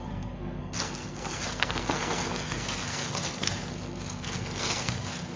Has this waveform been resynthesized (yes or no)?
yes